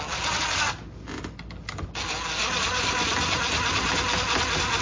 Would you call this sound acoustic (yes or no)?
yes